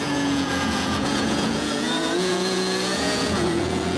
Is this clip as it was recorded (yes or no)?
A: no